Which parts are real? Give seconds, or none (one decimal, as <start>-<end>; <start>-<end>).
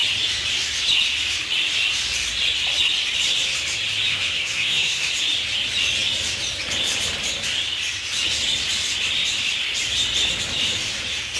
0.0-4.1; 5.1-11.4